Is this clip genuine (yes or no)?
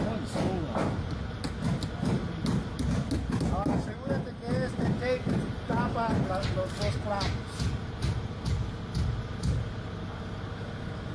yes